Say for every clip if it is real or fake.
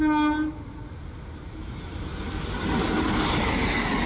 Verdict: real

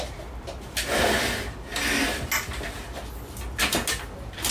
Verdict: real